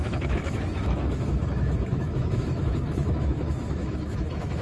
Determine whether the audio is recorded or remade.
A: remade